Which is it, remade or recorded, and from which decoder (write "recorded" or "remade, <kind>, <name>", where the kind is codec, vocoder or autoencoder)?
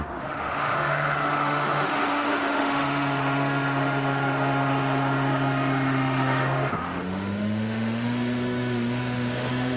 remade, autoencoder, DAC-VAE